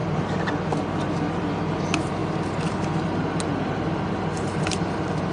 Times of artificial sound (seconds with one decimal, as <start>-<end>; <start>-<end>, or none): 0.0-0.5; 2.2-3.0